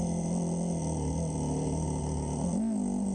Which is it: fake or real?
real